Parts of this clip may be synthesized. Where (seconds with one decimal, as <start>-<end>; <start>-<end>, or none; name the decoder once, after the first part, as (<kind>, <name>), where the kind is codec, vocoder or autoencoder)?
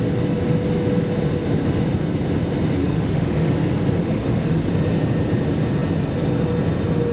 2.8-3.5 (autoencoder, DAC-VAE); 4.0-4.7